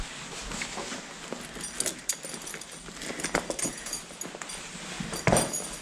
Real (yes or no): yes